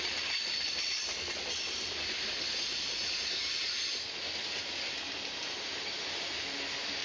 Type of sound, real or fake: real